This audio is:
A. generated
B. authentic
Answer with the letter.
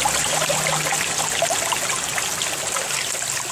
B